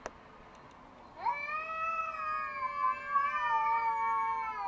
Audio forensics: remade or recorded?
recorded